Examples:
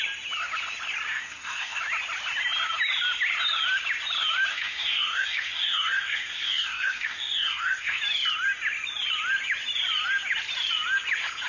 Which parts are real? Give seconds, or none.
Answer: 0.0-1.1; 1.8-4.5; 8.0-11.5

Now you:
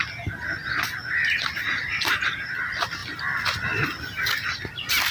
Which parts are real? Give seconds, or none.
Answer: 0.0-5.1